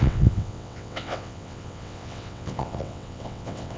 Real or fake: fake